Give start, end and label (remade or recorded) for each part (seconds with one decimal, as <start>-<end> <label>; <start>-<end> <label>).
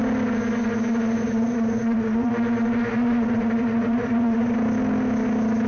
0.0-0.9 recorded; 0.9-2.3 remade; 2.3-2.9 recorded; 2.9-4.5 remade; 4.5-5.7 recorded